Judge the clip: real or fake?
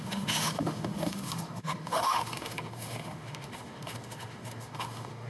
fake